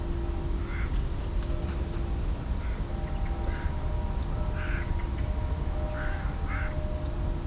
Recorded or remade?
recorded